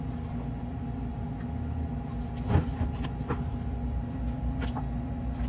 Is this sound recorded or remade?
recorded